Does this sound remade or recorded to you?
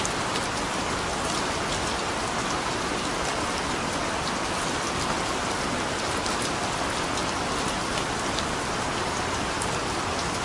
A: recorded